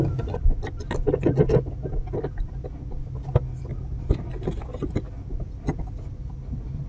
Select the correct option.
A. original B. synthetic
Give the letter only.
A